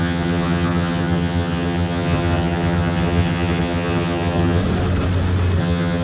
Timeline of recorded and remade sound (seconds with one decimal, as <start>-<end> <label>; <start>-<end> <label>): 0.0-4.6 remade; 4.6-5.6 recorded; 5.6-6.0 remade